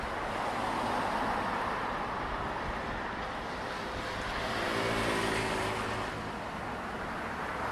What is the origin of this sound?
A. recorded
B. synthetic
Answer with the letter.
A